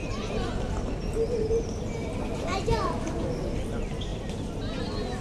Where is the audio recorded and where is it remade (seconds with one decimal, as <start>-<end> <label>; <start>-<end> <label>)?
0.0-5.2 recorded